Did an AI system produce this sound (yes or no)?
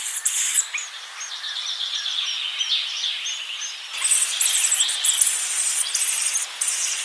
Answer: no